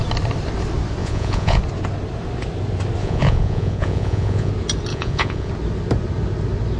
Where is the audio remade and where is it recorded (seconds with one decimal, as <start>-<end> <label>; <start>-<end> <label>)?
0.0-1.0 recorded; 1.0-1.6 remade; 1.6-3.0 recorded; 3.0-4.5 remade; 4.5-4.9 recorded; 4.9-5.5 remade; 5.5-6.8 recorded